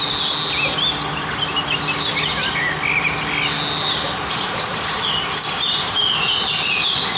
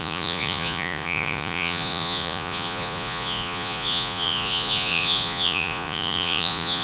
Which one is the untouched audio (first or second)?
first